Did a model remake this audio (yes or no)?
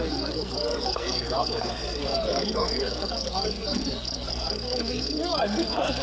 yes